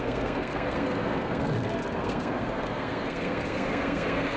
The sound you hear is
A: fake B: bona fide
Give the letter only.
A